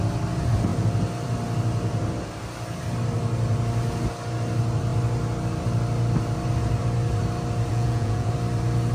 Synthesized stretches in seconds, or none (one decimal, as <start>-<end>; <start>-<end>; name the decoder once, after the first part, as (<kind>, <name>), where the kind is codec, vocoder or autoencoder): 7.7-8.3 (vocoder, Vocos)